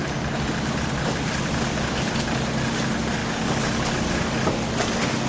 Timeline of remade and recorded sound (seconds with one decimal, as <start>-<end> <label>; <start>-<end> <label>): 0.0-5.3 recorded